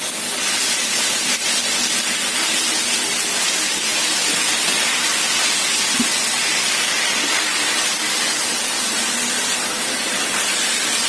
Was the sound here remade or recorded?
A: recorded